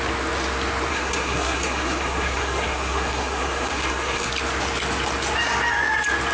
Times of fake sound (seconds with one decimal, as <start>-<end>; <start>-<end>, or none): 0.9-4.3